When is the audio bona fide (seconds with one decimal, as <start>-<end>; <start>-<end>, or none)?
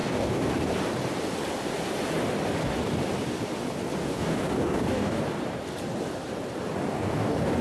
0.5-4.0; 5.2-6.9